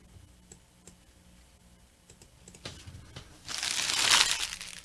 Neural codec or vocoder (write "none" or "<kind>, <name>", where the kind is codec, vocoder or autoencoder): none